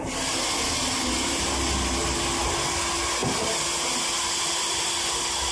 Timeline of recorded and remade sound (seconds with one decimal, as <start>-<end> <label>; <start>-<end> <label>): 0.0-5.5 recorded